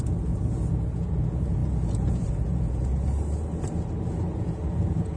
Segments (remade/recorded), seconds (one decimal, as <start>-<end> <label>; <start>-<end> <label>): 0.0-2.9 remade; 2.9-4.1 recorded; 4.1-5.2 remade